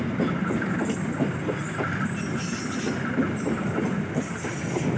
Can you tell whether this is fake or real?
real